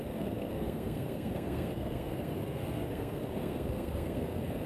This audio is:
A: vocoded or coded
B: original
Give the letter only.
A